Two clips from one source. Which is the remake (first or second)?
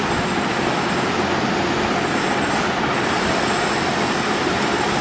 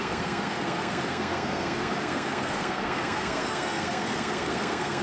second